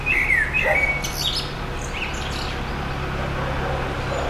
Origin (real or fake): real